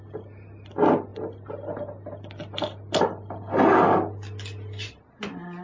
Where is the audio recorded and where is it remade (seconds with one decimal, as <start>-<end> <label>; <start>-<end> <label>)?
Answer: 0.0-5.6 recorded